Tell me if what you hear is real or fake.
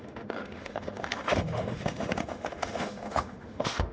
fake